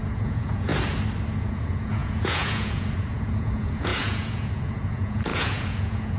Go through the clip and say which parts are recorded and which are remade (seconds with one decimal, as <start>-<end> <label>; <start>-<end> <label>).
0.0-0.7 remade; 0.7-1.4 recorded; 1.4-6.2 remade